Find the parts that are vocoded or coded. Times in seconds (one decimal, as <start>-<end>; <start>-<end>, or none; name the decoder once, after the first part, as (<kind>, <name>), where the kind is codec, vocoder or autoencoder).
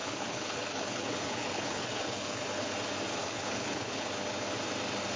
0.0-2.6 (codec, HILCodec); 3.2-4.1